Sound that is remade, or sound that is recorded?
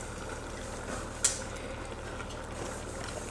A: recorded